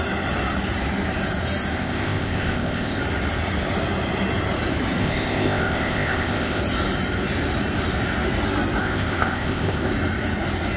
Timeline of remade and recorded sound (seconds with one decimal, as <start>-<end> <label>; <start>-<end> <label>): 0.0-1.7 recorded; 1.7-3.0 remade; 3.0-5.0 recorded; 5.0-6.6 remade; 6.6-8.8 recorded; 8.8-9.9 remade; 9.9-10.8 recorded